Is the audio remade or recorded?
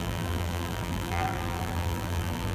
remade